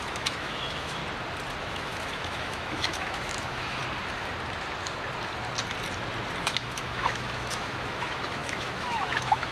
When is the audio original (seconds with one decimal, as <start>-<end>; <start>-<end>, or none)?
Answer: 1.0-1.6; 3.8-6.4